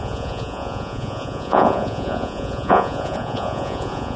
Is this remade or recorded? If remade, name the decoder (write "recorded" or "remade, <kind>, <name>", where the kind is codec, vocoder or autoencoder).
remade, vocoder, Vocos